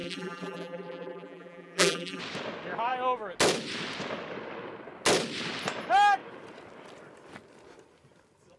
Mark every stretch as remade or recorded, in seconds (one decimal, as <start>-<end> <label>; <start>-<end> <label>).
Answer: 0.0-2.2 remade; 2.2-8.6 recorded